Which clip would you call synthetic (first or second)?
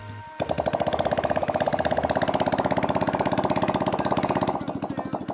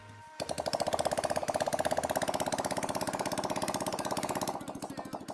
first